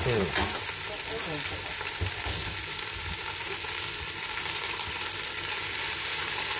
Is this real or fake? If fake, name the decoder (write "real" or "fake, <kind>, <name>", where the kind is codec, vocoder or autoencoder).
fake, vocoder, BigVGAN v2